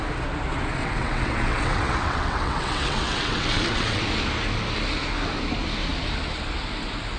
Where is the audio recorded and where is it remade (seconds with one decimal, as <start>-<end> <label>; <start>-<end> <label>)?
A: 0.0-0.8 recorded; 0.8-4.0 remade; 4.0-7.2 recorded